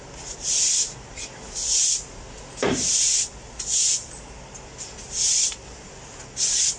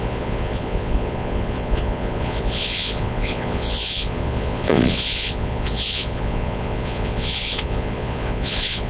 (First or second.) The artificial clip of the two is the second